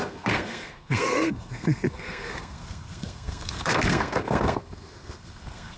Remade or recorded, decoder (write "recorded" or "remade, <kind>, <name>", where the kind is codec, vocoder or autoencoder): remade, codec, SNAC